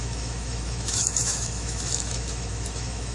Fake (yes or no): yes